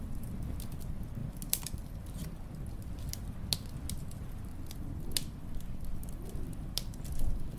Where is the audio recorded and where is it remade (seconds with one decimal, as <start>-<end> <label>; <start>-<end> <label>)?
0.0-7.6 recorded